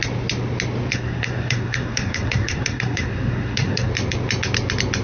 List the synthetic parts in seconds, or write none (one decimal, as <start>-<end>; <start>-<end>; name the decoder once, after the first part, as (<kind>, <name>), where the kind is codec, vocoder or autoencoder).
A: 0.9-3.9 (codec, SNAC)